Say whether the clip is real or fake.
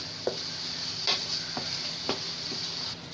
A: real